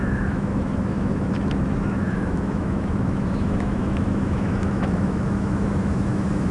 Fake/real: fake